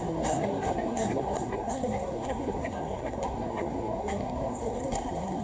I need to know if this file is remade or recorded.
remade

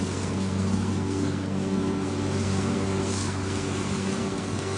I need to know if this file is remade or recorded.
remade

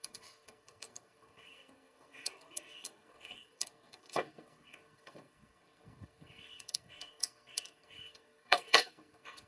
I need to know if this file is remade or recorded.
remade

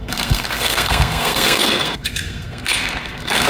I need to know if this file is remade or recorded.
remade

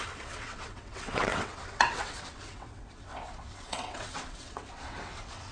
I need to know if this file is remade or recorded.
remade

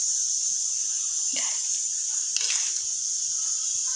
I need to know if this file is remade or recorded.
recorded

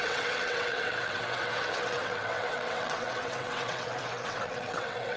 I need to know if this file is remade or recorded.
remade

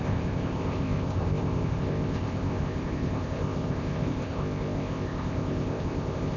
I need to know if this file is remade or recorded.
remade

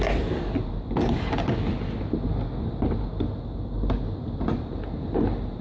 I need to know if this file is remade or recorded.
recorded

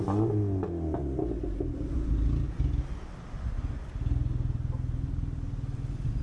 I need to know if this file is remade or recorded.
recorded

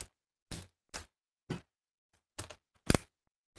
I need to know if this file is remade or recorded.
recorded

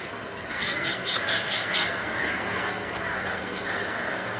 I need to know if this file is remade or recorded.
remade